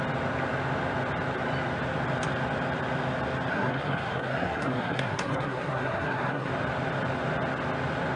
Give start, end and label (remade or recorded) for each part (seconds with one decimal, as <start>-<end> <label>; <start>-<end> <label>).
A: 0.0-3.5 recorded; 3.5-6.5 remade; 6.5-8.2 recorded